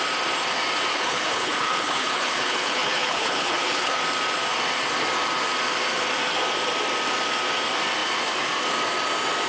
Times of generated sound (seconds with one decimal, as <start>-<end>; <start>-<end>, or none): 0.9-4.0